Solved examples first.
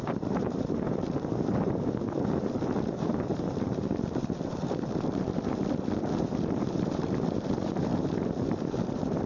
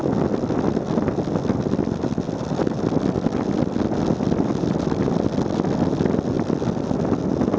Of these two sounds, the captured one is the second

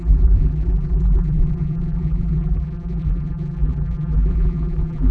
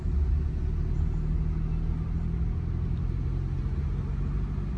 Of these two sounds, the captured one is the second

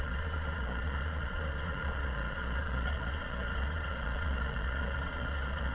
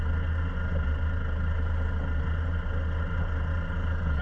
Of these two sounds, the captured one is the second